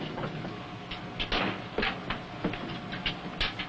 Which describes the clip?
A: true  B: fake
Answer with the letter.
A